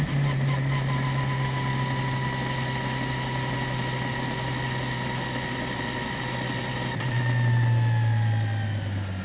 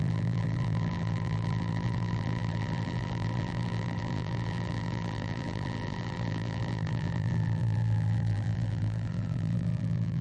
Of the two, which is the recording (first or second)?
first